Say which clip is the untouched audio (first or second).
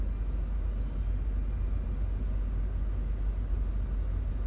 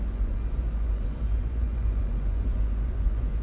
first